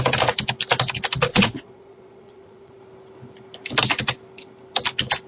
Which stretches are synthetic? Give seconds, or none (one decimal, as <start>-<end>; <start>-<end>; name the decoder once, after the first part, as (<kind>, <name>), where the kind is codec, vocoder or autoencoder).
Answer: 1.3-2.8 (vocoder, Vocos)

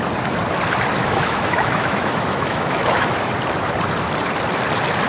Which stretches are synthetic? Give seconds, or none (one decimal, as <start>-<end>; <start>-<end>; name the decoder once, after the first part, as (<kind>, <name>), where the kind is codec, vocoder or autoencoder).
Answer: 1.0-3.3 (autoencoder, DAC-VAE)

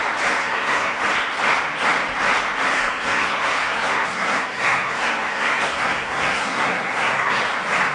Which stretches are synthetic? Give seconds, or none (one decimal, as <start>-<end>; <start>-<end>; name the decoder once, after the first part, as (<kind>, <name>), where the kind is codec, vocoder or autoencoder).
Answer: 0.4-1.0 (codec, SNAC); 2.7-7.4

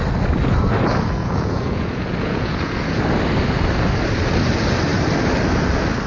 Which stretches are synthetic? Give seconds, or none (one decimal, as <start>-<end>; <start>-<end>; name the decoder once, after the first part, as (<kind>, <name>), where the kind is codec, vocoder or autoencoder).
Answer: 1.2-3.0 (vocoder, Vocos)

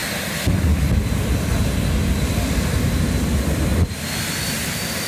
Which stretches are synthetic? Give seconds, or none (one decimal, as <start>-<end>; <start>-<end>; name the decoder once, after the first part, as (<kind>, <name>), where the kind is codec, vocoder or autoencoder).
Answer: none

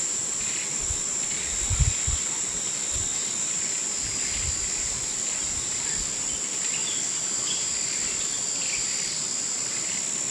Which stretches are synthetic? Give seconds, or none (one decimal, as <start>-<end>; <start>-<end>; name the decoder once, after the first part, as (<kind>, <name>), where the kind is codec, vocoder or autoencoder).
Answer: none

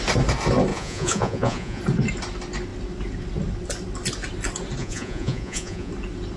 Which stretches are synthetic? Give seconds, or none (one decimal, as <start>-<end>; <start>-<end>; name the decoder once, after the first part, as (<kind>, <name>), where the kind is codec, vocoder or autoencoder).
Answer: 0.7-1.8 (vocoder, Vocos); 4.8-5.9